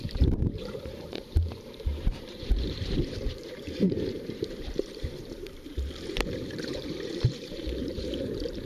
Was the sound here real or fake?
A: fake